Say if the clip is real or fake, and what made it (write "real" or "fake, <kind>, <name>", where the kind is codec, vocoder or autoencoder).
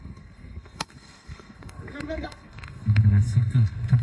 fake, codec, SNAC